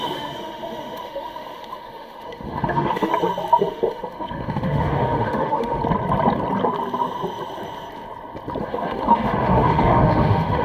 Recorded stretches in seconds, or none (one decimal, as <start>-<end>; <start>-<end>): 3.1-3.6; 5.8-8.6